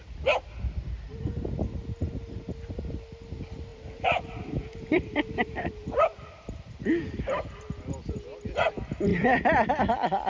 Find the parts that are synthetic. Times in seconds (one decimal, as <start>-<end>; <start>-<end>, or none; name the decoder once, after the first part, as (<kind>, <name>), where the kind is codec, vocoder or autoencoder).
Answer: 3.7-7.6 (vocoder, BigVGAN v2)